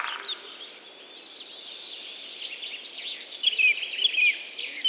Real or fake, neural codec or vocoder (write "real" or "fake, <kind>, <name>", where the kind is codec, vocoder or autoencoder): real